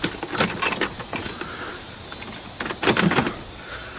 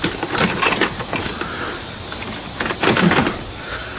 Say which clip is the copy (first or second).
second